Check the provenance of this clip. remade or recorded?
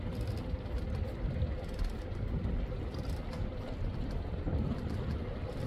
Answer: recorded